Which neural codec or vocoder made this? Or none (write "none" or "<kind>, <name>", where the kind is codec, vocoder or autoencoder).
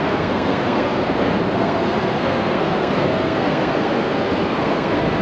codec, SNAC